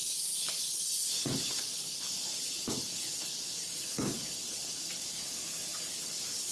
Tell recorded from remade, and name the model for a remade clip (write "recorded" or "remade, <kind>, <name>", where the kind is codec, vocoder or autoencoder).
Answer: remade, codec, HILCodec